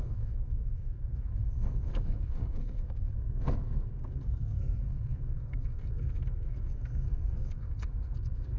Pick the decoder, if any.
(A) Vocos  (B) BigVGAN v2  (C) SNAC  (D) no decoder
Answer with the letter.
C